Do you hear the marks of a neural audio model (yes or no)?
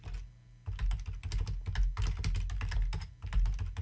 no